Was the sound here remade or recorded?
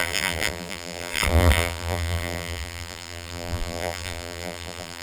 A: remade